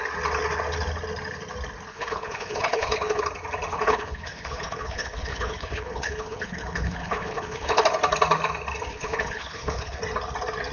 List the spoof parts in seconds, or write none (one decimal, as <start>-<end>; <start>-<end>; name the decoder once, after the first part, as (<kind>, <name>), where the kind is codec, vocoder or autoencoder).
1.9-3.2 (codec, HILCodec); 3.7-7.8; 8.9-10.0